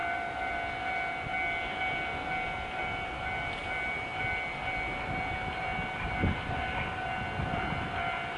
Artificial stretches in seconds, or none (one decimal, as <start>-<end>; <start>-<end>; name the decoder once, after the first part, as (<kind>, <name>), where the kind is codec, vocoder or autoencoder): 0.0-0.5 (vocoder, BigVGAN v2)